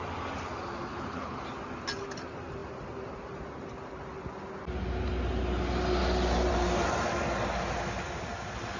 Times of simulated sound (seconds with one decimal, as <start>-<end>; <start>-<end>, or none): 0.9-1.4